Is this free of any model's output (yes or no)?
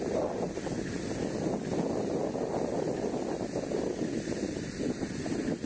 yes